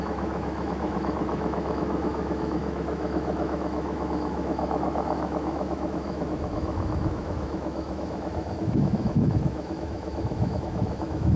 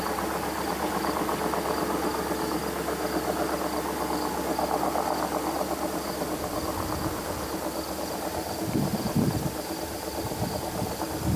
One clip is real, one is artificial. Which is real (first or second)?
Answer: second